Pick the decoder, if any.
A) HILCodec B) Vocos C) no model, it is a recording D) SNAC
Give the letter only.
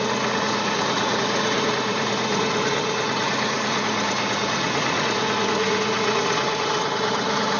B